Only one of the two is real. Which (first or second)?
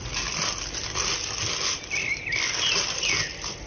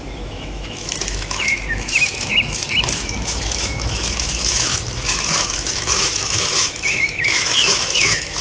first